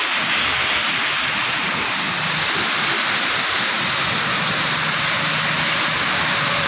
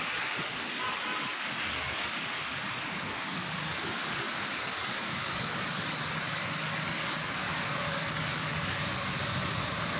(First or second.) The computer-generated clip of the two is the second